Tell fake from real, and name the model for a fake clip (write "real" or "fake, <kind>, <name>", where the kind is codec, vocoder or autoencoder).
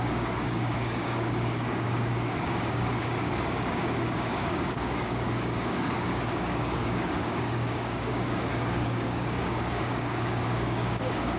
fake, codec, DAC